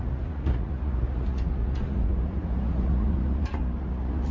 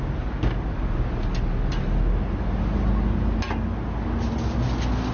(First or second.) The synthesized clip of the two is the first